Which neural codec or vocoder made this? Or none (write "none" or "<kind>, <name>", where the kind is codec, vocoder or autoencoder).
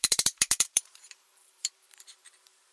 vocoder, BigVGAN v2